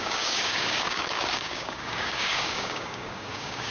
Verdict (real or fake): fake